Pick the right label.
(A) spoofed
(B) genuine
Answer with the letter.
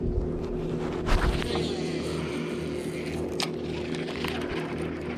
B